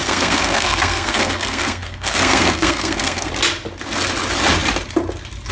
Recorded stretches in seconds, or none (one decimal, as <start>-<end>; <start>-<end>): 3.3-5.5